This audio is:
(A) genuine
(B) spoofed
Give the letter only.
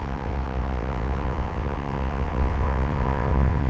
B